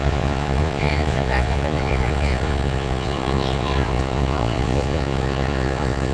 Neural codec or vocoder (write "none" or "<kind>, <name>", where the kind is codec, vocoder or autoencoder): vocoder, Vocos